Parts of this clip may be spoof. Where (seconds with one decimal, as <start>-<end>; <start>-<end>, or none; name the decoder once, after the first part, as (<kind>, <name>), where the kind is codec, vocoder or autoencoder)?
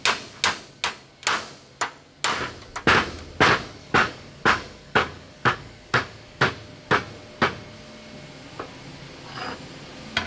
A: 3.8-6.4 (codec, DAC)